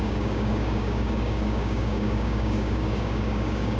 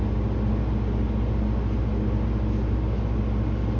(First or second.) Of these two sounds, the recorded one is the second